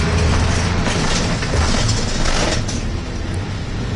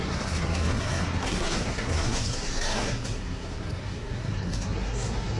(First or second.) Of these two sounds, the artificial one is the second